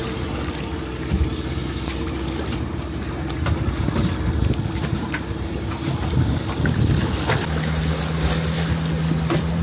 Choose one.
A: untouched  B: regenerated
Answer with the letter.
A